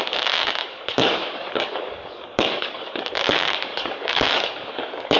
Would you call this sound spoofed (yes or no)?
yes